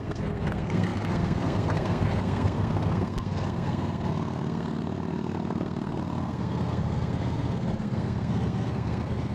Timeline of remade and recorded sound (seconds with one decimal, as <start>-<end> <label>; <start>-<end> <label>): 0.0-9.3 remade

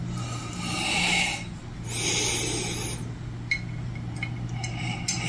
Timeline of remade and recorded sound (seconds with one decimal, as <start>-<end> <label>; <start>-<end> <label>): 0.0-5.3 recorded

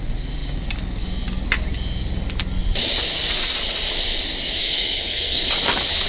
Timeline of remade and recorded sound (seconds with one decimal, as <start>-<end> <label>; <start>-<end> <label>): 0.0-4.6 recorded; 4.6-5.5 remade; 5.5-6.1 recorded

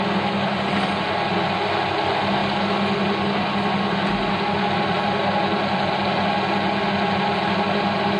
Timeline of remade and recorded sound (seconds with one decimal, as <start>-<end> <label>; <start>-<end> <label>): 0.0-8.2 recorded

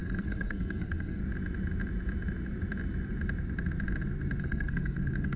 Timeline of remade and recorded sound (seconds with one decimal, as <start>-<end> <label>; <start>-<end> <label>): 0.0-1.2 remade; 1.2-4.4 recorded; 4.4-5.4 remade

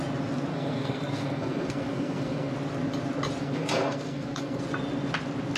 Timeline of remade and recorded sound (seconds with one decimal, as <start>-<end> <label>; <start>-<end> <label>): 0.0-0.5 recorded; 0.5-2.5 remade; 2.5-3.4 recorded; 3.4-4.6 remade; 4.6-5.6 recorded